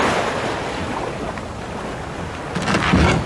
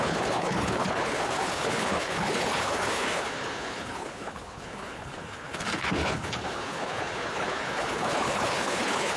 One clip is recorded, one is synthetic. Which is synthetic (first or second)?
second